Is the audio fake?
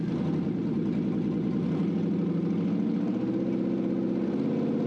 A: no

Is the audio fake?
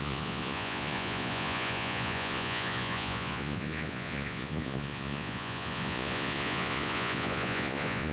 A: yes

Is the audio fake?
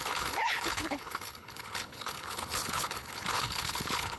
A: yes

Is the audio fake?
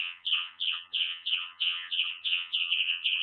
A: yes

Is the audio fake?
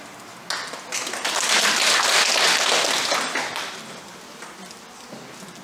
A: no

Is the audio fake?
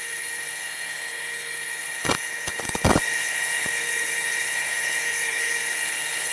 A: yes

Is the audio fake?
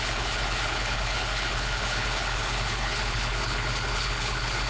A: yes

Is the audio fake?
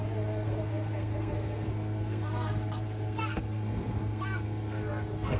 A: yes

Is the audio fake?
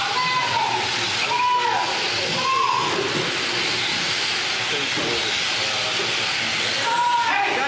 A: no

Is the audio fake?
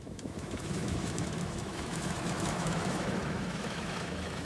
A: yes